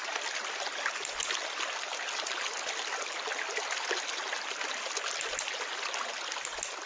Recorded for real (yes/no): yes